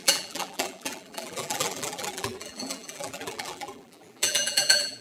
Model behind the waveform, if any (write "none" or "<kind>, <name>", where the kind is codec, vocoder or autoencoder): vocoder, BigVGAN v2